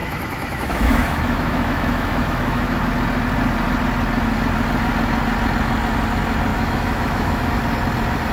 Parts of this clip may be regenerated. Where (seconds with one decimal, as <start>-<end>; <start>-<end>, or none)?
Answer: 0.0-2.8; 6.5-7.5

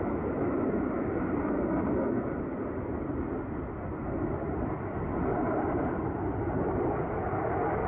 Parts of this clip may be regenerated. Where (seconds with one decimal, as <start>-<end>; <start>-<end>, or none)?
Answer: 5.3-6.0

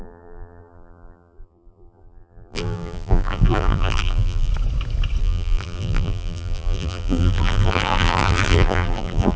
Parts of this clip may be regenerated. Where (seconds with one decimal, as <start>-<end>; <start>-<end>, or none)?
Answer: 0.0-4.5; 5.2-9.4